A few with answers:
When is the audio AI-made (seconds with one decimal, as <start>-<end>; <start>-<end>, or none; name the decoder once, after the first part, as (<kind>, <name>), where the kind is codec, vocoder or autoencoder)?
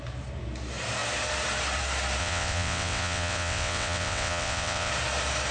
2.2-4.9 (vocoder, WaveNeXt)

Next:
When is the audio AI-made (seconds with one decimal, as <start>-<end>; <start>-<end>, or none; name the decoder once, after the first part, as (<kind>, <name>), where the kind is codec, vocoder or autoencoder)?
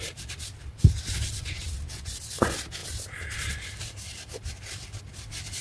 1.2-2.1 (vocoder, WaveNeXt)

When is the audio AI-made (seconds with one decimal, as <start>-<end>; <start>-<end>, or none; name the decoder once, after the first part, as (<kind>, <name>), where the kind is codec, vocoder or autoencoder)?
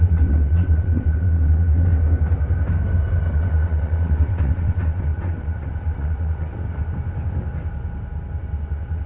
0.0-1.9 (vocoder, WaveNeXt); 3.2-6.8; 8.6-9.1